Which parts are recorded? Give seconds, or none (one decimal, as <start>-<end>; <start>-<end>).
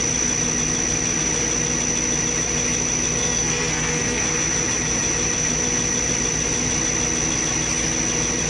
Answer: 0.0-3.2; 4.2-8.5